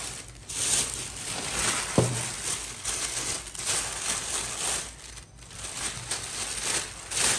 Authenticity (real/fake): real